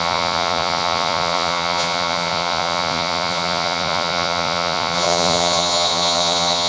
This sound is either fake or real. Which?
fake